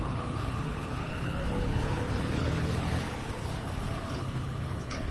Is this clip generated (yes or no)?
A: yes